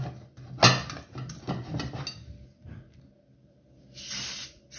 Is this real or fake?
real